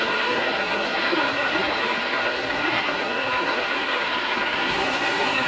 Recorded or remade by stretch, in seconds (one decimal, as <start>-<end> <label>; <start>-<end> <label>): 0.0-5.5 remade